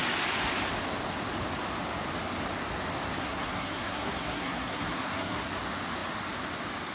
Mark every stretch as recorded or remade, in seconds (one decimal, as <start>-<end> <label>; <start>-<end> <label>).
0.0-3.2 recorded; 3.2-5.5 remade; 5.5-6.9 recorded